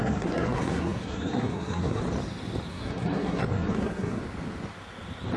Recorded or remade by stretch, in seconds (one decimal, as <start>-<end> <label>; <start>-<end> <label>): 0.0-2.0 remade; 2.0-2.7 recorded; 2.7-4.2 remade; 4.2-5.4 recorded